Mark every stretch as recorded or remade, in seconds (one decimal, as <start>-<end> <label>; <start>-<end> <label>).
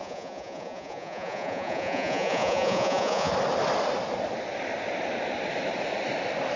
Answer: 0.0-3.3 remade; 3.3-6.6 recorded